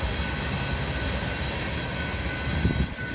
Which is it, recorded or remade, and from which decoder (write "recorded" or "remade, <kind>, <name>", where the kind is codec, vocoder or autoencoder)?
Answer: recorded